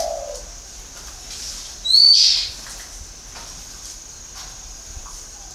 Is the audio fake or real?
real